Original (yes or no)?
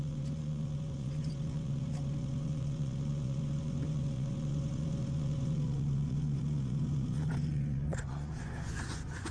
no